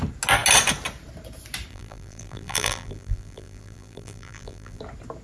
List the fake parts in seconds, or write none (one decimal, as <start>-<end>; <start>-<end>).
1.7-4.8